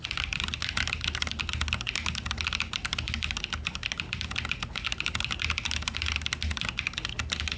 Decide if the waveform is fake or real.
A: real